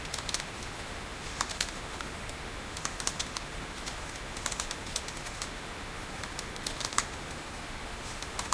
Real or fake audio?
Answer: fake